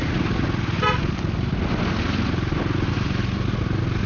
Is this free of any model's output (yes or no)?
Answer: yes